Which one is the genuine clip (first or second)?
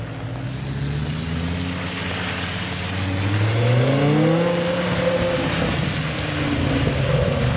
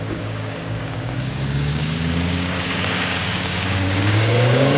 first